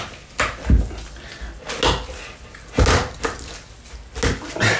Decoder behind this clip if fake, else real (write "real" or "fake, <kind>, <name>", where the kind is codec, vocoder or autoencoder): real